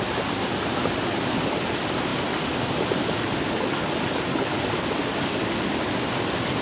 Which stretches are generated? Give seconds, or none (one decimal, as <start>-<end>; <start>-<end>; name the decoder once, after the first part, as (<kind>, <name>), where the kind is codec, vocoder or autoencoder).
none

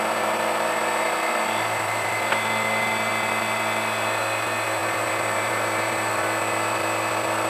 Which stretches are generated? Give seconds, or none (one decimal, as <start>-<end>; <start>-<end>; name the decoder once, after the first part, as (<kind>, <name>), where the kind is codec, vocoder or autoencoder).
4.8-6.1 (vocoder, BigVGAN v2)

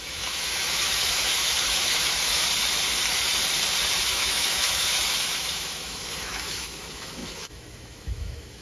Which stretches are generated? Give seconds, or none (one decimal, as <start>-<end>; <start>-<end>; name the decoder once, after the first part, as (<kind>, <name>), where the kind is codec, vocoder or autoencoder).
0.0-2.4 (autoencoder, DAC-VAE); 4.0-8.6

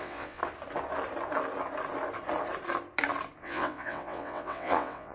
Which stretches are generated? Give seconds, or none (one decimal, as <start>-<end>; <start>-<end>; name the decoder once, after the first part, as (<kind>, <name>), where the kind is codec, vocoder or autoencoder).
0.0-0.4 (vocoder, WaveNeXt); 3.4-5.1

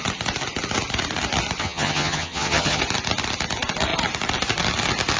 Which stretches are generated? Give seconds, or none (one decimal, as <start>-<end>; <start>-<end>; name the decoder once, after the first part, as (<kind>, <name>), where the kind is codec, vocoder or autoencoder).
1.6-2.8 (vocoder, HiFi-GAN)

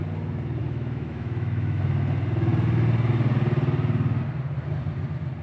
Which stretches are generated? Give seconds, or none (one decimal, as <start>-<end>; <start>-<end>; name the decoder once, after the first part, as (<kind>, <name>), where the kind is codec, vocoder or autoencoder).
0.6-1.8 (autoencoder, DAC-VAE)